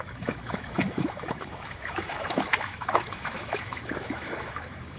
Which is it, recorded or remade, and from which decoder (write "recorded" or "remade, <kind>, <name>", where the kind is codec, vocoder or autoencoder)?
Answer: remade, autoencoder, DAC-VAE